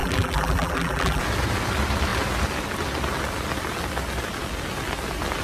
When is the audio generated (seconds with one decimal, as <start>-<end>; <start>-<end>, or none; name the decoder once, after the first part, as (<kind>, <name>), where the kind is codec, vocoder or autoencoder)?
0.0-1.2 (vocoder, BigVGAN v2)